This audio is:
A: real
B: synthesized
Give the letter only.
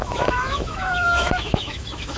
B